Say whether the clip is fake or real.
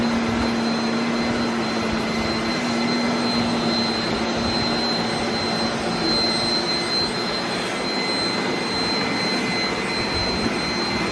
real